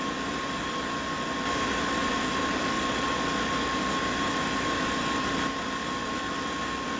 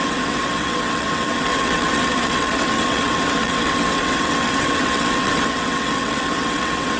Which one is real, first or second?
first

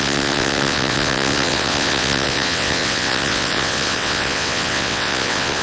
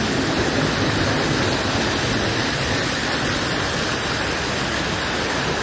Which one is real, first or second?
second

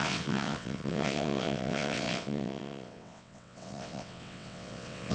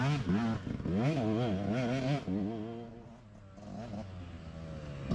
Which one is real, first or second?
second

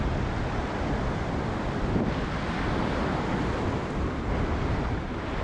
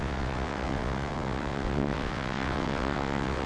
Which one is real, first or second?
first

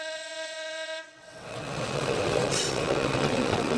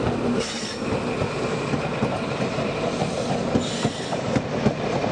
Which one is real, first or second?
second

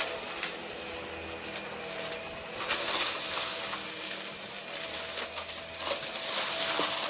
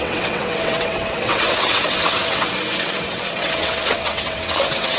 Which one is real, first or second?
first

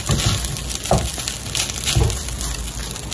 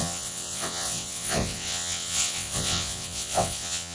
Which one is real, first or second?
first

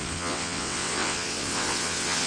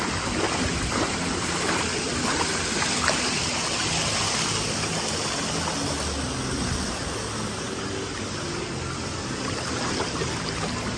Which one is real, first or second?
second